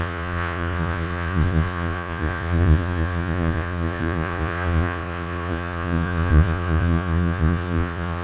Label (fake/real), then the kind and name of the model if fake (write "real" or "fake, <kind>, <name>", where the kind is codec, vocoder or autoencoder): fake, vocoder, Vocos